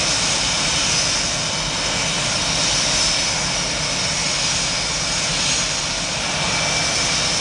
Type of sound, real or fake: real